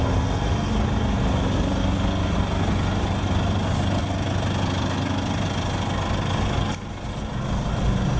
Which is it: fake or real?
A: real